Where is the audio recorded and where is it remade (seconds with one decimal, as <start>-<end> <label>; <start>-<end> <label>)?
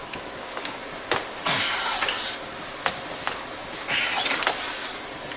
0.0-0.8 remade; 0.8-5.4 recorded